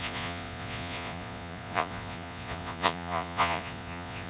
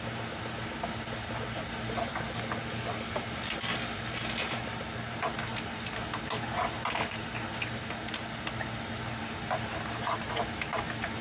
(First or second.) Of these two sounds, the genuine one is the second